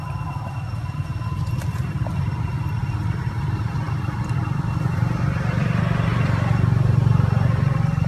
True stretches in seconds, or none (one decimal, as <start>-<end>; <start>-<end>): 0.0-8.1